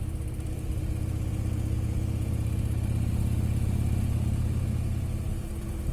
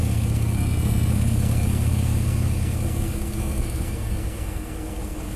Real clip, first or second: first